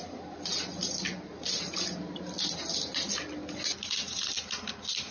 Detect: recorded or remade recorded